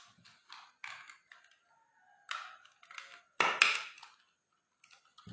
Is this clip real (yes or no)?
yes